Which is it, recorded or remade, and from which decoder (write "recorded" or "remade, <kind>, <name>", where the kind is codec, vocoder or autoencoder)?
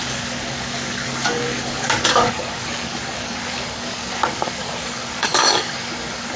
remade, codec, DAC